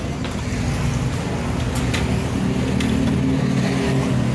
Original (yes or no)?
yes